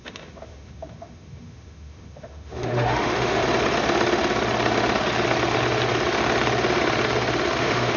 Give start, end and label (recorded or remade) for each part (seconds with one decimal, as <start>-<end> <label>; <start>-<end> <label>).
0.0-3.4 remade; 3.4-7.6 recorded; 7.6-8.0 remade